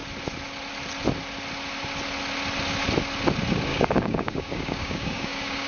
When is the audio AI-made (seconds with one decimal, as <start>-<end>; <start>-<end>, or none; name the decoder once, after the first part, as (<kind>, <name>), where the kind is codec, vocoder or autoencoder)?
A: 3.7-5.7 (codec, DAC)